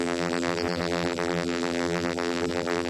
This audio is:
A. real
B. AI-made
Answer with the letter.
B